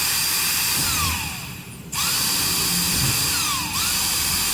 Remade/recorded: remade